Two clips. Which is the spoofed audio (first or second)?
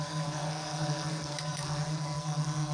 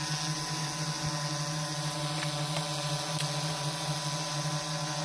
first